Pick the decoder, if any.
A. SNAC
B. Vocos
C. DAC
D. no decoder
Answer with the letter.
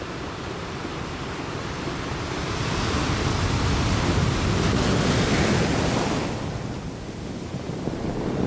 D